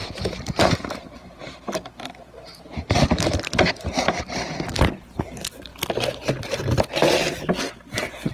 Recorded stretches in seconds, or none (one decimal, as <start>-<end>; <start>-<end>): 5.7-8.3